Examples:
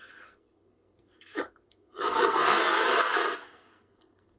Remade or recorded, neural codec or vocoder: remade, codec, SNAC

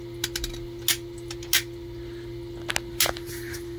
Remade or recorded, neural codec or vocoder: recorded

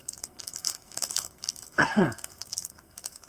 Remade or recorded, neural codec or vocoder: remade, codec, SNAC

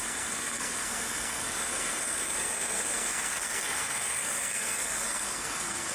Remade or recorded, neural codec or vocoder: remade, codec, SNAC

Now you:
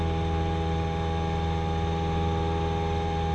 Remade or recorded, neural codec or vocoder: recorded